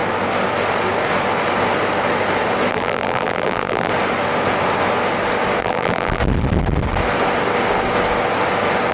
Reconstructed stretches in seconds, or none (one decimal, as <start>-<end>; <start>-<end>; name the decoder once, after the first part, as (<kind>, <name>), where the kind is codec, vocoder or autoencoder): 2.7-3.9 (vocoder, BigVGAN v2); 5.6-6.2